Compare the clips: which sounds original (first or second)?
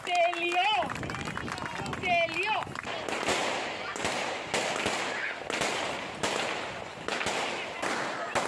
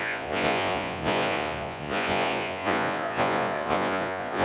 first